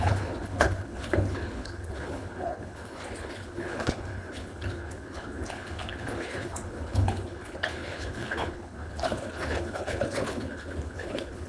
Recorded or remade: remade